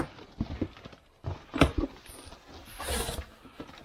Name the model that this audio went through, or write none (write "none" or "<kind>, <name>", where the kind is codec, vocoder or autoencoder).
none